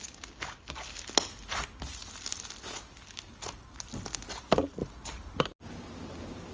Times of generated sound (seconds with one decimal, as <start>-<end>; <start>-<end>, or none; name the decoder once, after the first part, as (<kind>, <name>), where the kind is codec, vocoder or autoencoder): none